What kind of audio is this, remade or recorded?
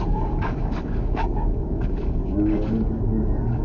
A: remade